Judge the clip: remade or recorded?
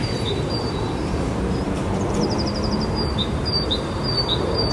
remade